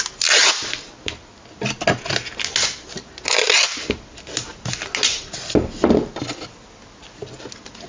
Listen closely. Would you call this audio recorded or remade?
recorded